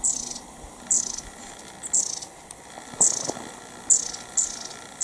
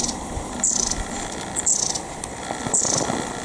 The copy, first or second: second